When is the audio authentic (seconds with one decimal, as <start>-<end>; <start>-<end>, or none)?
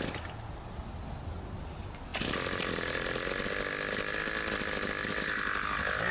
0.0-6.1